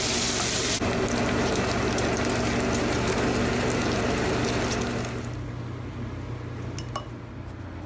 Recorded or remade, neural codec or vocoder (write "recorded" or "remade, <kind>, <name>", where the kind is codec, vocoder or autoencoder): recorded